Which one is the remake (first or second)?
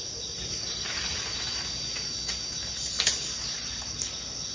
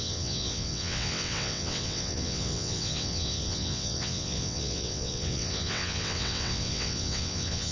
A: second